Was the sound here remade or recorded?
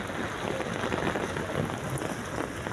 recorded